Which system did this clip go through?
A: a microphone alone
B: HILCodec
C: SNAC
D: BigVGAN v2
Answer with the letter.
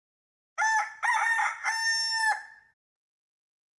A